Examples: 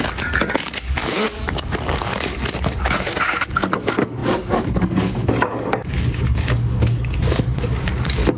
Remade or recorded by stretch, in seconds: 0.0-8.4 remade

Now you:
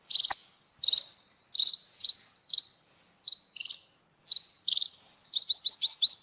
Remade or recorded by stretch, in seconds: 0.0-6.2 recorded

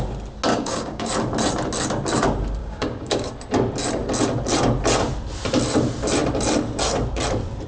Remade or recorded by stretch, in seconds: 0.0-0.5 recorded; 0.5-1.1 remade; 1.1-2.6 recorded; 2.6-3.3 remade; 3.3-7.7 recorded

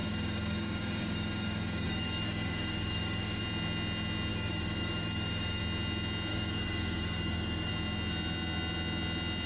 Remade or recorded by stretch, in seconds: 0.0-3.4 remade; 3.4-4.3 recorded; 4.3-5.6 remade; 5.6-6.3 recorded; 6.3-7.7 remade; 7.7-9.5 recorded